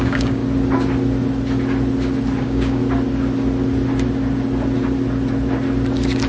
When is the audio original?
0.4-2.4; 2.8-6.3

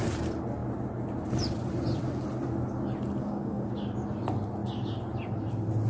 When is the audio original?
0.0-3.2; 3.7-5.9

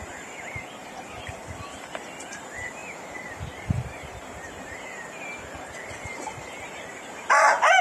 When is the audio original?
0.0-7.8

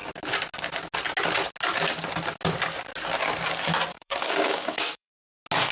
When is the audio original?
0.0-3.9; 5.1-5.7

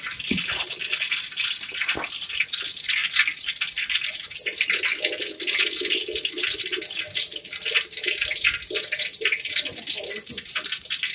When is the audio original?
0.0-11.1

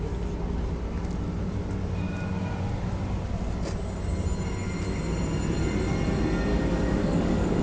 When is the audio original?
0.0-6.5

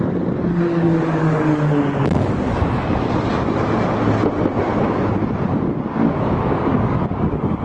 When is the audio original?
2.5-5.5

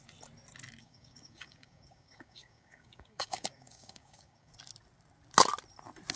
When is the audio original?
0.0-0.8; 4.5-6.2